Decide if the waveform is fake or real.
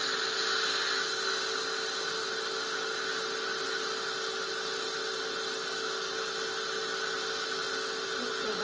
real